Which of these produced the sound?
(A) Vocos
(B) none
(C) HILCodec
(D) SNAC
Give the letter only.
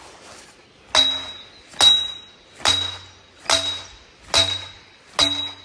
B